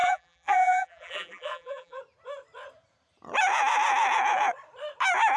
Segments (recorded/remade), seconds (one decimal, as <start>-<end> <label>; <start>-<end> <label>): 0.0-2.0 remade; 2.0-5.4 recorded